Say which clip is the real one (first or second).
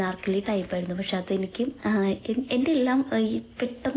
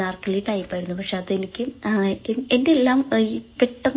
first